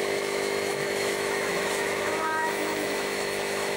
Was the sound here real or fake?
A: fake